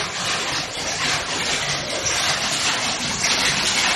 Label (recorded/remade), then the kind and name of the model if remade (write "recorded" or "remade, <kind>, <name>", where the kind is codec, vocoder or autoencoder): recorded